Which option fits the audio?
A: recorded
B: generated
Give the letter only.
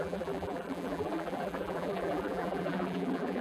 B